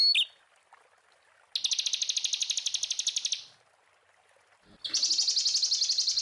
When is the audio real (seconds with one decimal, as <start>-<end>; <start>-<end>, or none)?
0.0-6.2